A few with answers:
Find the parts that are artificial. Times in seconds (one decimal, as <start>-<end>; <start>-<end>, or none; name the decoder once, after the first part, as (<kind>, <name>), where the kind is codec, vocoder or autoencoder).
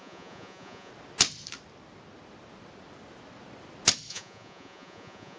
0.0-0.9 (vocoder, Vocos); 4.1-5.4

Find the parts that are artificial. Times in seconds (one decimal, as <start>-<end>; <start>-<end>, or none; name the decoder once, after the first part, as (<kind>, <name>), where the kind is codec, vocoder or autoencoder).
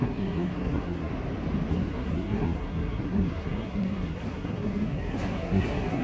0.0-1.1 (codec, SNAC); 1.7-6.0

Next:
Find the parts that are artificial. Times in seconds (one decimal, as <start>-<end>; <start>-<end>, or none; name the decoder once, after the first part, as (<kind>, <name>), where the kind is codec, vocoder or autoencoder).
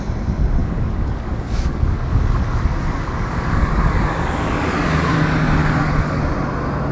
0.6-4.7 (codec, DAC); 5.6-6.2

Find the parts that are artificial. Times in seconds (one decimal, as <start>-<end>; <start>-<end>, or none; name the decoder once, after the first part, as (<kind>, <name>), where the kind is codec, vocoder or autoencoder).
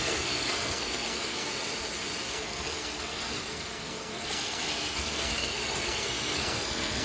0.0-1.5 (codec, SNAC); 2.3-7.0